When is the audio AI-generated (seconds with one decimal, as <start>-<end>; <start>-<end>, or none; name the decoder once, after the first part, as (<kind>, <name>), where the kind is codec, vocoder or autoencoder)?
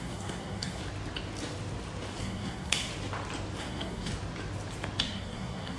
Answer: 0.0-0.8 (codec, SNAC); 2.2-2.9; 3.6-4.1; 5.0-5.8